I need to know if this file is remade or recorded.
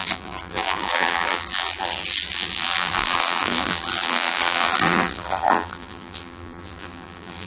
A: remade